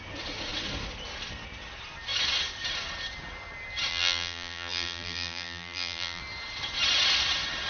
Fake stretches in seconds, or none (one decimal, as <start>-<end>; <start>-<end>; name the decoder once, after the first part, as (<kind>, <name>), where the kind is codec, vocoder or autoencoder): 3.9-6.2 (vocoder, BigVGAN v2)